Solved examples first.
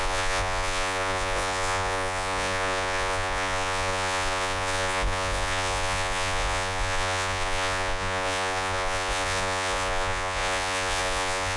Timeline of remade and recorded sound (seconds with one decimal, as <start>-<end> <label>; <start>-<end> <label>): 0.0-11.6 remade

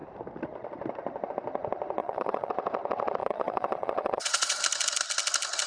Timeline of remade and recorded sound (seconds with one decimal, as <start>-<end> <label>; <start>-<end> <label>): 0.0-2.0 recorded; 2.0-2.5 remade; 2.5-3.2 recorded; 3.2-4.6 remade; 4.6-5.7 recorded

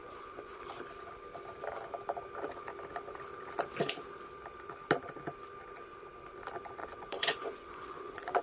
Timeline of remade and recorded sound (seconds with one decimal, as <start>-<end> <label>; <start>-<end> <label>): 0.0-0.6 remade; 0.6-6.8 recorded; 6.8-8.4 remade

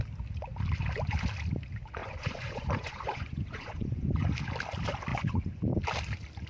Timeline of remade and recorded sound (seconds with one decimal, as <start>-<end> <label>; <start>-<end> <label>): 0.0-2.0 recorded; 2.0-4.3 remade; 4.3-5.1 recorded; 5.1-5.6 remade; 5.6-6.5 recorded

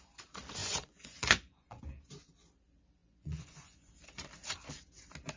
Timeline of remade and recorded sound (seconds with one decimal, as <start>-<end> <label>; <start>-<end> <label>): 0.0-0.6 recorded; 0.6-1.8 remade; 1.8-3.0 recorded; 3.0-3.9 remade; 3.9-5.4 recorded

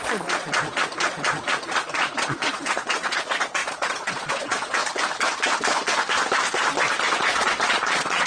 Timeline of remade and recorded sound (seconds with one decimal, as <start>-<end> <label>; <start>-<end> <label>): 0.0-4.8 remade; 4.8-7.1 recorded; 7.1-8.3 remade